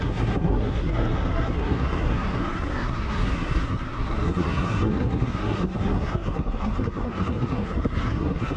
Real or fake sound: fake